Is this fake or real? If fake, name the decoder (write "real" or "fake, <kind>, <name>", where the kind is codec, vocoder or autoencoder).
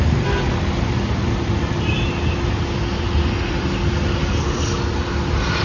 real